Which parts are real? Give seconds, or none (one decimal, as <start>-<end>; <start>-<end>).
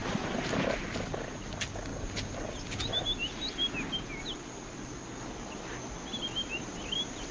0.0-7.3